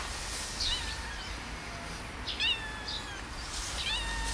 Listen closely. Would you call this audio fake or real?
real